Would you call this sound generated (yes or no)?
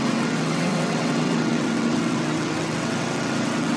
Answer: yes